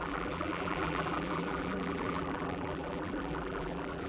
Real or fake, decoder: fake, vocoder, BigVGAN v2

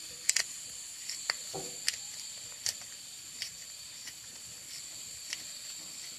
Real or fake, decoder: real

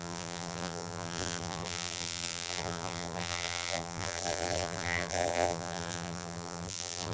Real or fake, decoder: fake, vocoder, BigVGAN v2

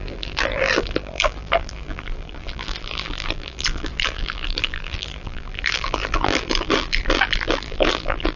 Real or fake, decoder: fake, vocoder, BigVGAN v2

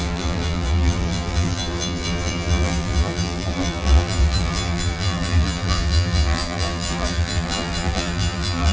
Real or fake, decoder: fake, vocoder, BigVGAN v2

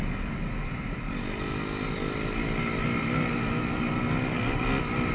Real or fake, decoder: real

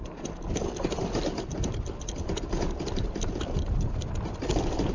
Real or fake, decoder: real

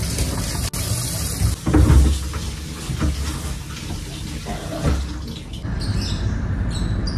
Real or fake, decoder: real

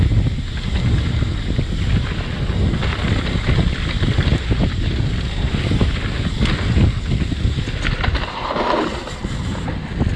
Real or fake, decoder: real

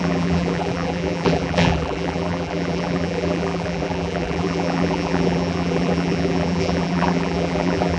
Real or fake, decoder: fake, vocoder, BigVGAN v2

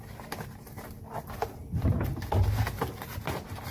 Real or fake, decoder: real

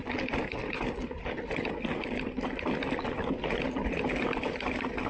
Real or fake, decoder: real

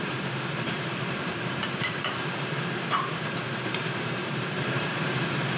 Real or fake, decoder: fake, vocoder, BigVGAN v2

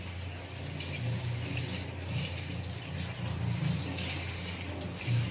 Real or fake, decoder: real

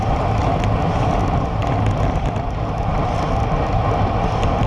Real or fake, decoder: real